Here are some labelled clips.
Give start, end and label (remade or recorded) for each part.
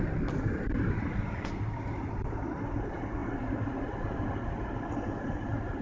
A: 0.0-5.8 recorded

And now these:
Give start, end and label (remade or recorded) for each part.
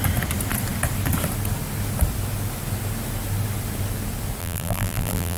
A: 0.0-4.4 recorded; 4.4-5.4 remade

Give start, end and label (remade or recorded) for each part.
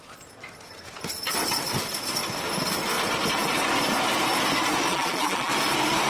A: 0.0-4.9 recorded; 4.9-5.5 remade; 5.5-6.1 recorded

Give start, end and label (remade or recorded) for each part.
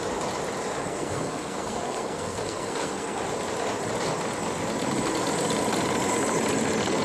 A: 0.0-0.8 recorded; 0.8-3.2 remade; 3.2-7.0 recorded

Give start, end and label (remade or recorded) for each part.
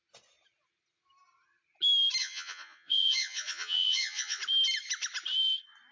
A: 0.0-2.2 recorded; 2.2-4.4 remade; 4.4-5.9 recorded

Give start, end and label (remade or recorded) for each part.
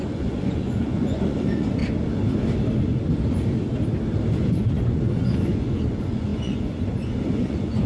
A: 0.0-1.8 remade; 1.8-4.3 recorded; 4.3-7.9 remade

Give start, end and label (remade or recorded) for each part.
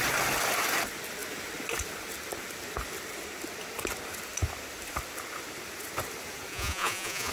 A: 0.0-6.5 recorded; 6.5-7.3 remade